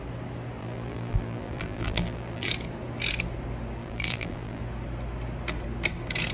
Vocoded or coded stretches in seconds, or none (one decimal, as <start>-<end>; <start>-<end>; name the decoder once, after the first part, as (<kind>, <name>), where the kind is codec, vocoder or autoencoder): 0.6-2.5 (vocoder, BigVGAN v2); 3.8-4.6